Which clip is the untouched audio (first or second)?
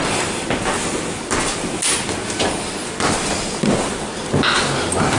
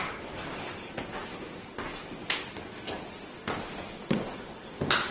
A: first